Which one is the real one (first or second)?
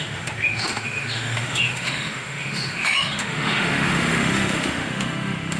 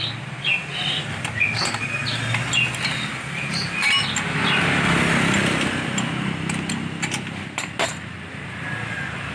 second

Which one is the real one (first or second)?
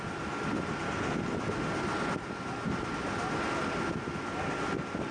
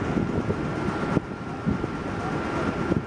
first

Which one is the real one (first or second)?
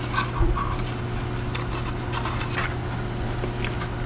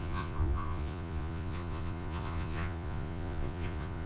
first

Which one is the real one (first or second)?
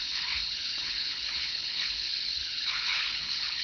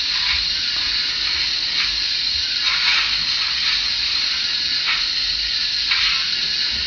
second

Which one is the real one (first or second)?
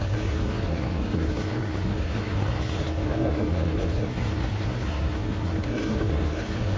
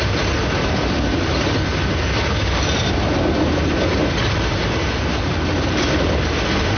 second